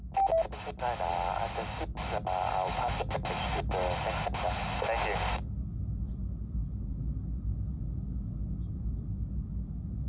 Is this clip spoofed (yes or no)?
no